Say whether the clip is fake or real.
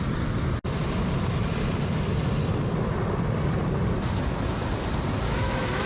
real